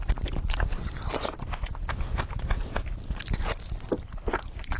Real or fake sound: real